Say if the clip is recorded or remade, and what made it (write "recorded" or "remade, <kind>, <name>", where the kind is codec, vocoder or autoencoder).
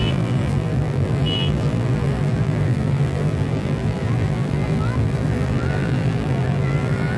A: remade, vocoder, BigVGAN v2